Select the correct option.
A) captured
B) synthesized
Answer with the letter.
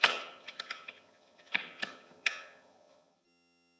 B